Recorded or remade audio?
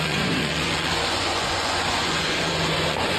remade